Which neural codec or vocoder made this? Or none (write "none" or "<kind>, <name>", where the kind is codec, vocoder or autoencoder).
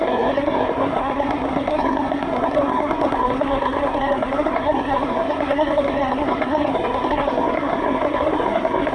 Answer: codec, SNAC